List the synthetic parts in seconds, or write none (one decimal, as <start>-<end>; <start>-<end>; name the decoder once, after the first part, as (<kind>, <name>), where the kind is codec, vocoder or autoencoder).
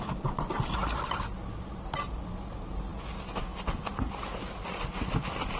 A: none